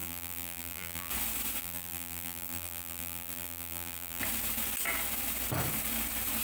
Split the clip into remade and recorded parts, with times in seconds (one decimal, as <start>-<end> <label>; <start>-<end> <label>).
0.0-1.1 remade; 1.1-1.6 recorded; 1.6-4.2 remade; 4.2-6.4 recorded